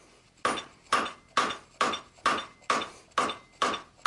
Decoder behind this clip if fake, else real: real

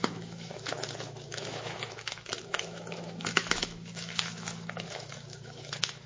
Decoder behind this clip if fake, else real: fake, autoencoder, DAC-VAE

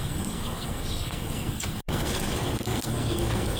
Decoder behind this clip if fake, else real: fake, codec, SNAC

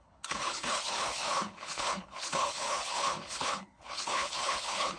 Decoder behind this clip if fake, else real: fake, codec, HILCodec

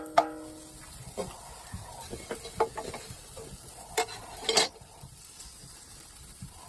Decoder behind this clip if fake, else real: real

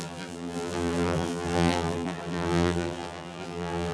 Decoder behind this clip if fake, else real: fake, vocoder, BigVGAN v2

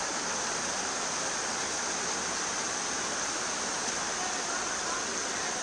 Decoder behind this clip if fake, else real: real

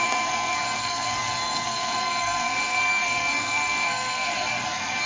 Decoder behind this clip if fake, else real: fake, codec, SNAC